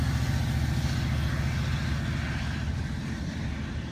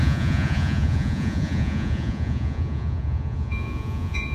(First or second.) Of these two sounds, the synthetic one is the second